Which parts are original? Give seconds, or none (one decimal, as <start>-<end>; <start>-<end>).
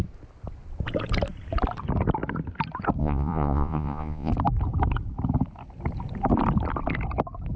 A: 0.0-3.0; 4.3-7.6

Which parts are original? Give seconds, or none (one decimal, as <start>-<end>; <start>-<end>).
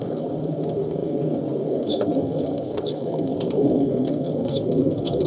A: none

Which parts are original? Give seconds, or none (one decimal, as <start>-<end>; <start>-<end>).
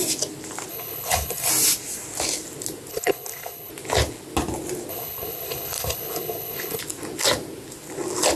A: 0.0-0.7; 1.5-2.9; 3.7-4.9; 6.8-8.4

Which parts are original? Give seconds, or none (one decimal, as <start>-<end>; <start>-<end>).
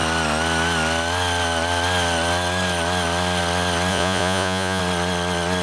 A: 0.0-3.9; 4.8-5.6